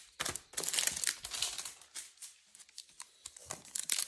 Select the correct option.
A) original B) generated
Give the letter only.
A